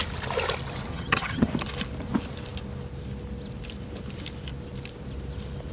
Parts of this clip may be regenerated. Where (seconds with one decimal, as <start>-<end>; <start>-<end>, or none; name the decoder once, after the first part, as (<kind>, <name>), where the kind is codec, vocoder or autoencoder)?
0.9-1.5 (vocoder, HiFi-GAN)